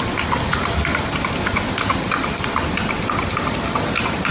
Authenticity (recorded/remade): recorded